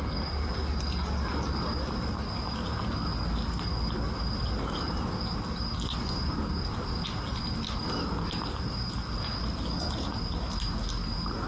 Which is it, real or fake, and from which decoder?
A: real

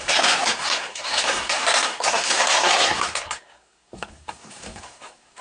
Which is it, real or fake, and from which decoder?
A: fake, codec, SNAC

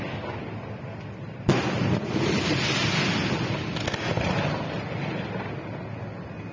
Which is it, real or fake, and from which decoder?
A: real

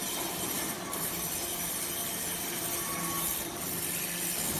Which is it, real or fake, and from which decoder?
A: real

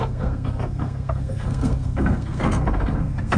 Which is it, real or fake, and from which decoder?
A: fake, codec, SNAC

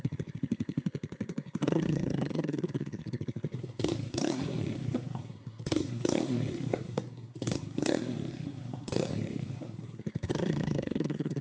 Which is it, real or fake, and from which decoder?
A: fake, codec, SNAC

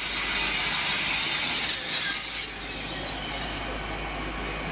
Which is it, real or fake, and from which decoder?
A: real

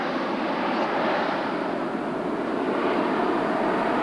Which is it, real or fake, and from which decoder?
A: real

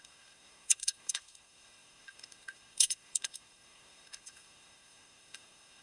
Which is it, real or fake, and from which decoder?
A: fake, codec, SNAC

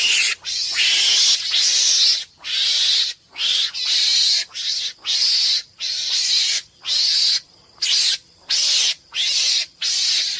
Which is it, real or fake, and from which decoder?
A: real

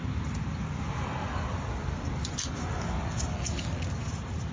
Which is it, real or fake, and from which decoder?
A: real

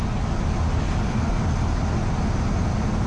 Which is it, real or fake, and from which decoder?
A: real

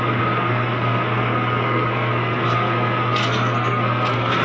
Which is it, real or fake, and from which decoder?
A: fake, codec, SNAC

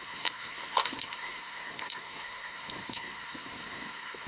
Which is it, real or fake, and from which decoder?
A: fake, codec, SNAC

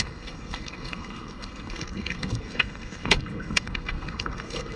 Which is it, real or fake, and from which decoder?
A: fake, codec, SNAC